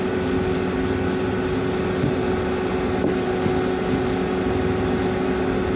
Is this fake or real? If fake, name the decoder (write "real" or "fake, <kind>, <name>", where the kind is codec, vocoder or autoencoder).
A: real